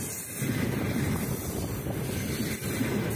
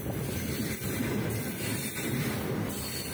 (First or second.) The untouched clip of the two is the first